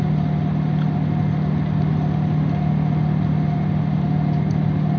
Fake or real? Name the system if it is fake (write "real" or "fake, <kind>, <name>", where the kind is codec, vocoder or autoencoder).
real